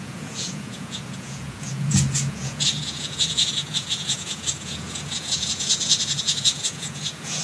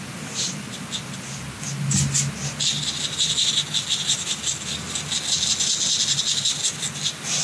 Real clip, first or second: second